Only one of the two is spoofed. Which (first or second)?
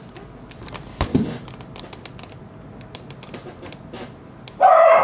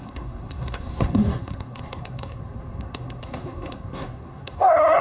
second